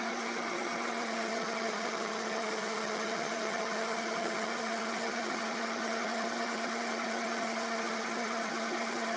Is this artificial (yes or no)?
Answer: yes